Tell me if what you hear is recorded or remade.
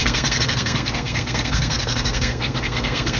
remade